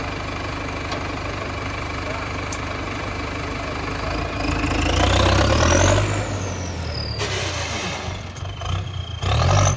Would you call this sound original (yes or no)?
yes